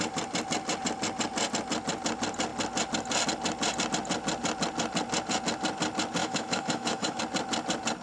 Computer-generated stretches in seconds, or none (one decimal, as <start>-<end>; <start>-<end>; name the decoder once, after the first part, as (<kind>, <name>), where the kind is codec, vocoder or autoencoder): 6.2-7.2 (autoencoder, DAC-VAE)